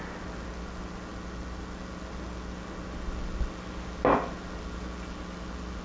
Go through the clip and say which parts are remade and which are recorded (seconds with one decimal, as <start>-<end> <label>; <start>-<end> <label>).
0.0-5.8 recorded